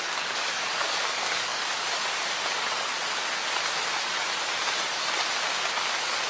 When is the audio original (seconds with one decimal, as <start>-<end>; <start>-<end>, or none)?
3.0-5.7